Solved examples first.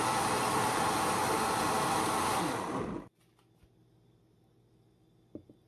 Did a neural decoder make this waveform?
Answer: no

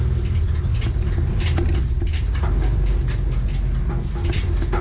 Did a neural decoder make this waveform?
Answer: no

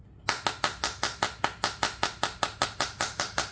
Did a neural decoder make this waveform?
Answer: no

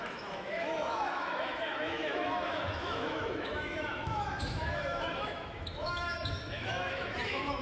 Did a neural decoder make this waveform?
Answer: yes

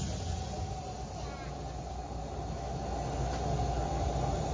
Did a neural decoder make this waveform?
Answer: no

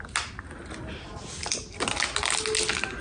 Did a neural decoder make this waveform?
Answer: no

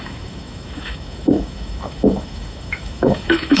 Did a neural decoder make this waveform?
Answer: yes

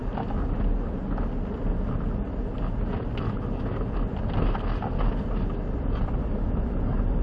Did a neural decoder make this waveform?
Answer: no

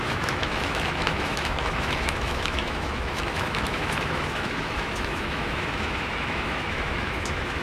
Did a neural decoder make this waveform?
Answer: yes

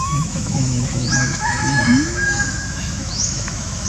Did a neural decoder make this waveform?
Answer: yes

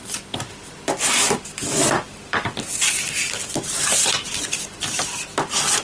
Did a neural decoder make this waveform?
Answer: no